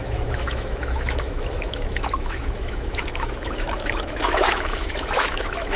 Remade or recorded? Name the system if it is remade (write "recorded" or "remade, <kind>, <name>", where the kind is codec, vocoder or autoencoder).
remade, autoencoder, DAC-VAE